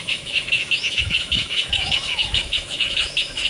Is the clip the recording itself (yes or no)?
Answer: no